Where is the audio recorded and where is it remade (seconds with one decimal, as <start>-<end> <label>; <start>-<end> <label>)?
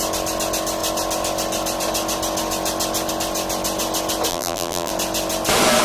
0.0-4.3 recorded; 4.3-4.9 remade; 4.9-5.8 recorded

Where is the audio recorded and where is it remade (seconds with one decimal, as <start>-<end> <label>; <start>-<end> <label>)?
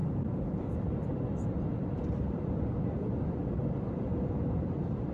0.0-5.1 remade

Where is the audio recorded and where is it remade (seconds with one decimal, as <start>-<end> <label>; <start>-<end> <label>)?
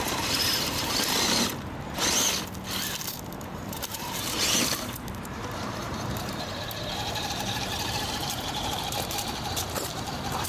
0.0-1.5 remade; 1.5-3.0 recorded; 3.0-10.5 remade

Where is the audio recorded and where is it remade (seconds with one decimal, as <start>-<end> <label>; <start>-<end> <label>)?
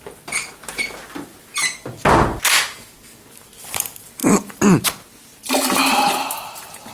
0.0-6.9 recorded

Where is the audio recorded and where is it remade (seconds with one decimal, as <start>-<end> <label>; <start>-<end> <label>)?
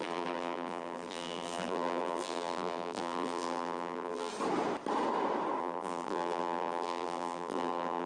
0.0-4.3 remade; 4.3-5.6 recorded; 5.6-8.1 remade